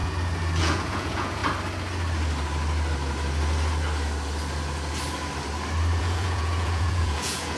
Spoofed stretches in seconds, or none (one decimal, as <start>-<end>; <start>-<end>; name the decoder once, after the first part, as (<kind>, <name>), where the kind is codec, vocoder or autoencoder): 0.6-1.4 (vocoder, Vocos); 6.0-7.6